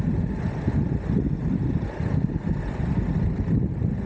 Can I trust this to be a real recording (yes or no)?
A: yes